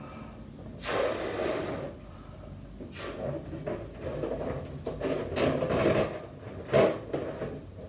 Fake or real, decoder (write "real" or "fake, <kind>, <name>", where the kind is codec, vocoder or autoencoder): real